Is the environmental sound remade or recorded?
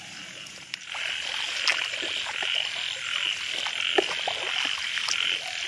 recorded